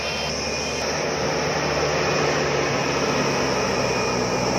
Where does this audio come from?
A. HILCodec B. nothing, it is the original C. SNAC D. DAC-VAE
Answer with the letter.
B